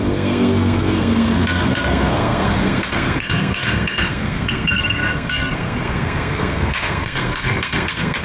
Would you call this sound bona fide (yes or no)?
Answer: no